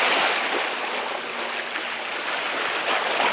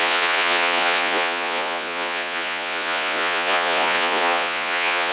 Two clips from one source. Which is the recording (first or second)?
first